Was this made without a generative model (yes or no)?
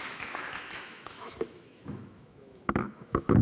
no